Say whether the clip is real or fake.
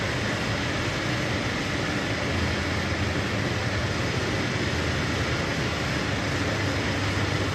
real